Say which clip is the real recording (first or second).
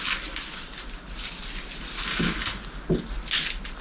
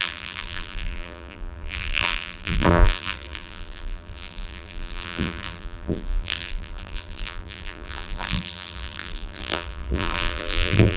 first